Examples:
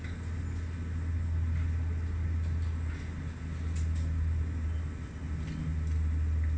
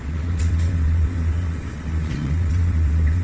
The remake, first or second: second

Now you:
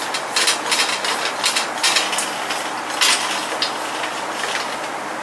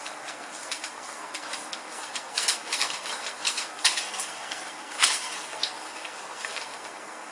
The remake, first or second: second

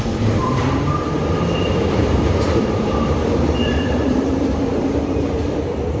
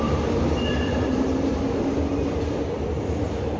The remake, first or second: first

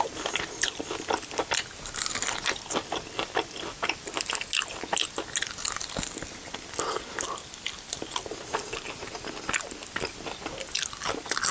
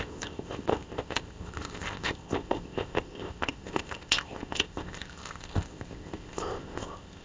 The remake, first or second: second